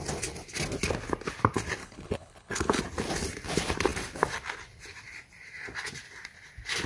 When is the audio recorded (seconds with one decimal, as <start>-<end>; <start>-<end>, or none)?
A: 0.0-1.8; 2.8-6.9

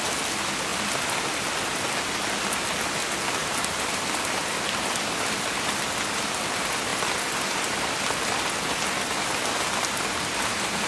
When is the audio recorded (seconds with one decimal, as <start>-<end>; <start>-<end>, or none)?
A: 0.0-3.4; 5.8-10.9

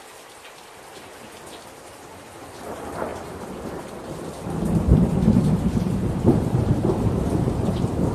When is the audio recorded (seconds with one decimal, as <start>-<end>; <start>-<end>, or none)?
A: 0.0-3.1; 3.8-4.9

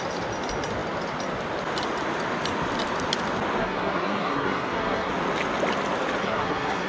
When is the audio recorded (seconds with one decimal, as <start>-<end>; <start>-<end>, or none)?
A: 0.0-3.6; 5.1-6.2

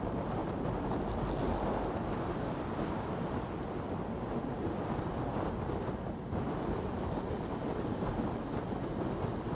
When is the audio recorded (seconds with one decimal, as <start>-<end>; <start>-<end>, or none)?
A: 0.0-9.5